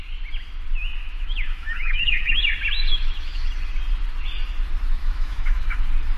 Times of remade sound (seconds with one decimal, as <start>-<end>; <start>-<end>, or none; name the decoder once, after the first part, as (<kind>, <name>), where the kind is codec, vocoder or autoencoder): 1.0-2.4 (autoencoder, DAC-VAE); 2.9-3.5; 5.0-5.8